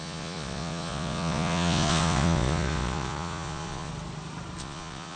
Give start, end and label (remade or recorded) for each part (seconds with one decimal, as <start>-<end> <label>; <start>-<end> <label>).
0.0-3.9 remade; 3.9-4.6 recorded; 4.6-5.2 remade